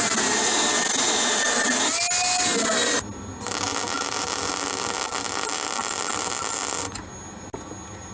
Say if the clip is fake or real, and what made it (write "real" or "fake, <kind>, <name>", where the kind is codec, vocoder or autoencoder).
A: real